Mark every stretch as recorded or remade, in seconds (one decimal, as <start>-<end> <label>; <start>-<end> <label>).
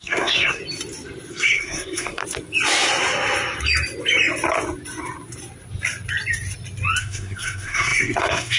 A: 0.0-0.6 remade; 0.6-1.3 recorded; 1.3-2.2 remade; 2.2-7.0 recorded; 7.0-8.6 remade